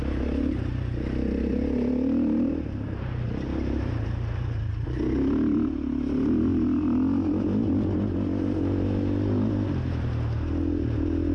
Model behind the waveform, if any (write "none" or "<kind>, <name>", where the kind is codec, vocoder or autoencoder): none